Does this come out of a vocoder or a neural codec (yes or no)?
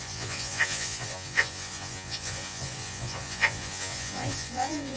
yes